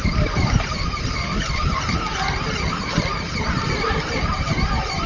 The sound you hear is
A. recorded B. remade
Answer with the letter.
B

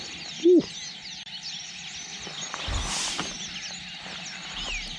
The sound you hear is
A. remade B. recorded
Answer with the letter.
B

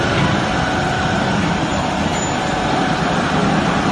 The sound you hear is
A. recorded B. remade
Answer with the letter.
A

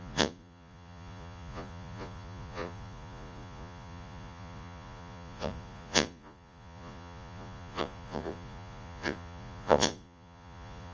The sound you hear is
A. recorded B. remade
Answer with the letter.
B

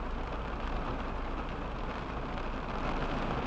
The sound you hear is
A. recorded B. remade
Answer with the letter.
A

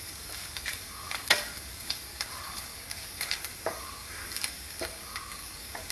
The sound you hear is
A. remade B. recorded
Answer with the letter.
A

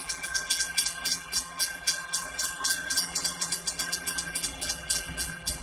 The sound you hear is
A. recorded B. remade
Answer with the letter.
B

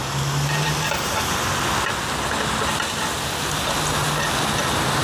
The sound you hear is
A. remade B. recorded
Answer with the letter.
B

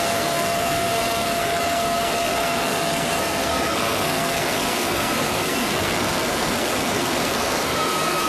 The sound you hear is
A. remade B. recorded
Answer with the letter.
A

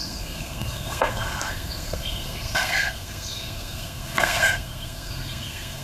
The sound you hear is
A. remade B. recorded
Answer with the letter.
A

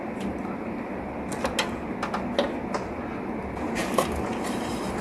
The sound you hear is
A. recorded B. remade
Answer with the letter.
A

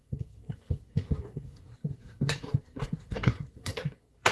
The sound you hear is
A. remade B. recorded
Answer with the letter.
A